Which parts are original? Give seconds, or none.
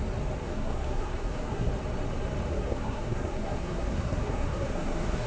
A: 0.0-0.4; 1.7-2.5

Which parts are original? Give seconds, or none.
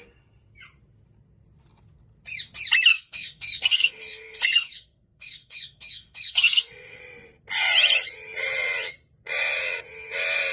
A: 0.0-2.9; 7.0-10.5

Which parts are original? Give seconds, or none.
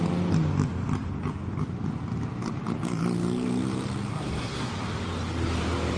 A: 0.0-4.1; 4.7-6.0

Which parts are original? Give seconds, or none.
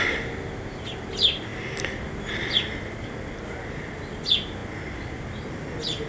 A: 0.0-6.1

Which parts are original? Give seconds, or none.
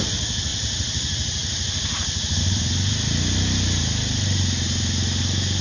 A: 0.0-5.6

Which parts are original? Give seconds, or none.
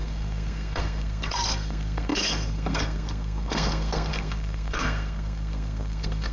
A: none